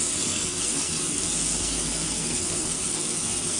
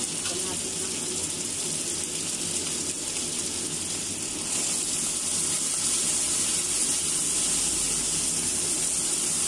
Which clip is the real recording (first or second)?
second